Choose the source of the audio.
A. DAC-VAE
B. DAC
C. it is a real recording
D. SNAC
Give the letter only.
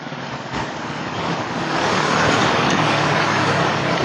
B